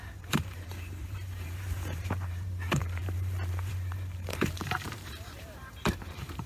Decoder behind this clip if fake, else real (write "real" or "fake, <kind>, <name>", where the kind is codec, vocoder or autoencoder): fake, vocoder, BigVGAN v2